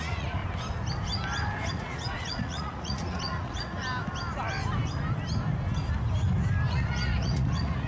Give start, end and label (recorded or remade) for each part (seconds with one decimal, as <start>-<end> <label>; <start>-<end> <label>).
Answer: 0.0-0.4 remade; 0.4-1.7 recorded; 1.7-3.8 remade; 3.8-6.7 recorded; 6.7-7.9 remade